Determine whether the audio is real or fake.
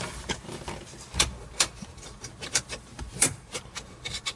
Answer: fake